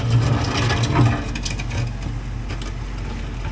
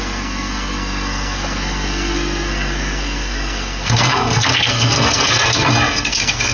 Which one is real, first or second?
first